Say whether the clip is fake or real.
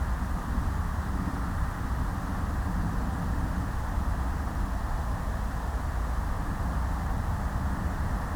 real